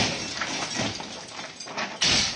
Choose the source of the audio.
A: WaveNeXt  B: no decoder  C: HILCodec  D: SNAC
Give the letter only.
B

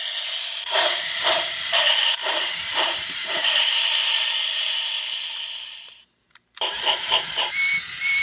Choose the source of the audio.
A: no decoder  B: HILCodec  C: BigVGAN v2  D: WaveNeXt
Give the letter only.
C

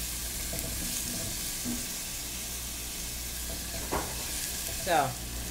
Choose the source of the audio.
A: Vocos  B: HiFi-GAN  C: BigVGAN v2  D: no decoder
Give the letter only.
D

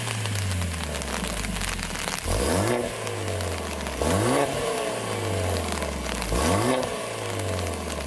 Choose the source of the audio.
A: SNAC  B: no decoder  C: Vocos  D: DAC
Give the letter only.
B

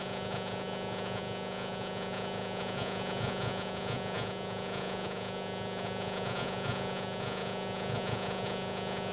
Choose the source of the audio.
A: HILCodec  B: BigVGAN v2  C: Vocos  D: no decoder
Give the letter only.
C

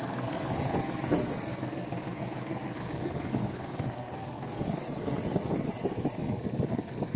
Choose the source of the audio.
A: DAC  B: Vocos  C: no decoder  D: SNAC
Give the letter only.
D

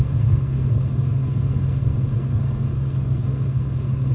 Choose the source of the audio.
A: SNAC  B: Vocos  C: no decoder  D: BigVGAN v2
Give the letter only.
A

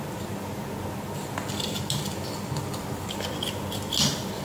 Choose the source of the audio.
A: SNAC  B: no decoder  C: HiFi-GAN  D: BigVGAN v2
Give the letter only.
B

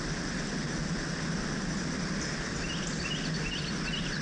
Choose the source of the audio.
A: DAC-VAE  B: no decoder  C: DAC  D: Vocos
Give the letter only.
B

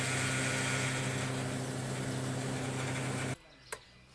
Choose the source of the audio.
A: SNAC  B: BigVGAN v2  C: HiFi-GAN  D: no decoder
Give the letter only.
D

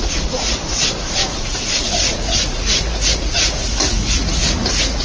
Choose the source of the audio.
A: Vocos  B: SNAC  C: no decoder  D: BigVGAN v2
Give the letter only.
A